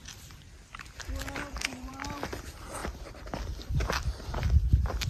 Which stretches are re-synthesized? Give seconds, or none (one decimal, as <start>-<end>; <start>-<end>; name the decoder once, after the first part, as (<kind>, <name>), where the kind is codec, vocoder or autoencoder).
0.0-1.9 (vocoder, BigVGAN v2); 2.8-5.1